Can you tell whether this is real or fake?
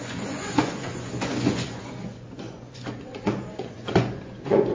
fake